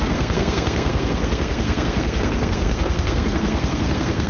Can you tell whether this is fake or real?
fake